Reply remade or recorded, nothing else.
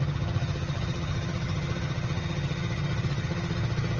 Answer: remade